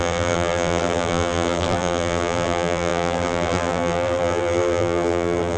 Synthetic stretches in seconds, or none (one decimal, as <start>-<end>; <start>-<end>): 0.0-5.6

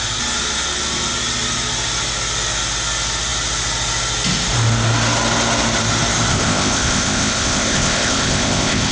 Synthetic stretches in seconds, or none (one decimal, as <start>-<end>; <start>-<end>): 6.3-8.9